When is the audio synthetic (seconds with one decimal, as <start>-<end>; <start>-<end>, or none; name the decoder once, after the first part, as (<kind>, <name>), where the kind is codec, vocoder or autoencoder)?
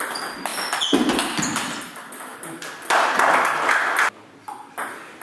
2.3-3.7 (vocoder, BigVGAN v2)